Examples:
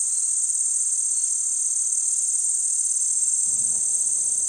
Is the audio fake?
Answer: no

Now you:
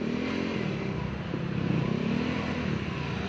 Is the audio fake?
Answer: no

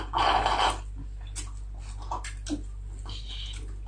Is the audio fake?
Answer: no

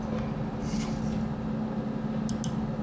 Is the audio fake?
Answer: no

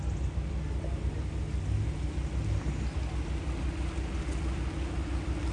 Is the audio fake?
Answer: no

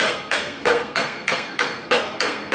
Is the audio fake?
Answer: yes